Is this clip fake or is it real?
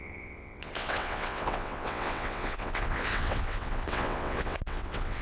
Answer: fake